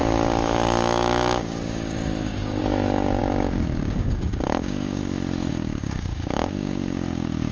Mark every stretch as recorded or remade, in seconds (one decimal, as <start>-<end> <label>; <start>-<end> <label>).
0.0-5.0 remade; 5.0-5.5 recorded; 5.5-7.5 remade